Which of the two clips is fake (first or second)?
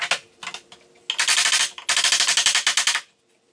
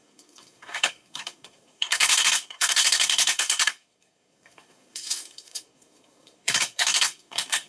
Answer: second